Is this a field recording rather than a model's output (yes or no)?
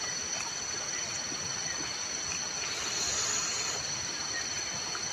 yes